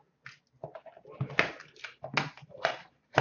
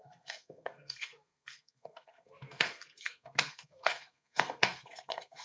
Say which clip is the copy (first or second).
second